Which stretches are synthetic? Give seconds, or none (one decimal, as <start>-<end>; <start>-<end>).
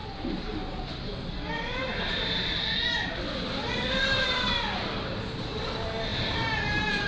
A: 0.0-2.5; 4.0-5.6; 6.1-7.1